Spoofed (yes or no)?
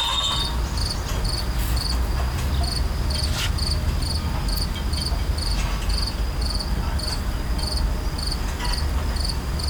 no